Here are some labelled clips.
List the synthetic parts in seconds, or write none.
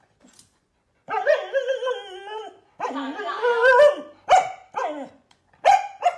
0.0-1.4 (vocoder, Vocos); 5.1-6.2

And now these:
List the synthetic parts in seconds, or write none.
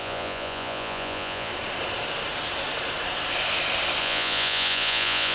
0.0-1.5 (vocoder, Vocos); 4.0-5.3